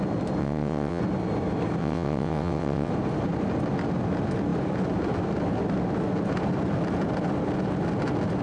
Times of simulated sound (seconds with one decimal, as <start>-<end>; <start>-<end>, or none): 0.4-1.0; 1.8-2.9